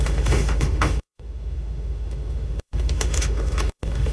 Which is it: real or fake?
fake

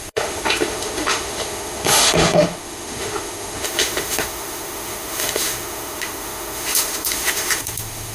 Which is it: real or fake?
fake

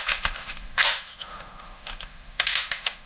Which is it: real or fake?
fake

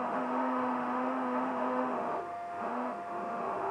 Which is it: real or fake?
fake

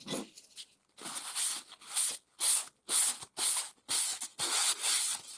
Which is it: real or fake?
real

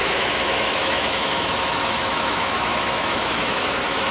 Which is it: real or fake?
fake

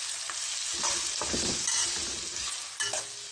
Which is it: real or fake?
real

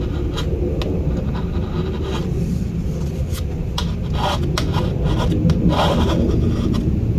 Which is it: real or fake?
real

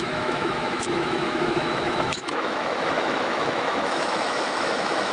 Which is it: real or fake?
fake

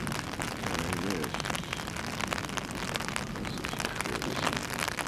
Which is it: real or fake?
real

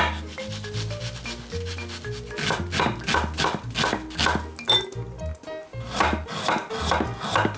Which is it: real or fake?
real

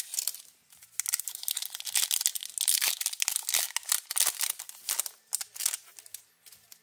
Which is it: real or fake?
real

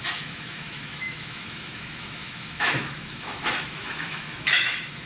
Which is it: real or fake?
fake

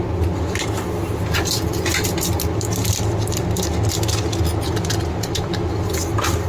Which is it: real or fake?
real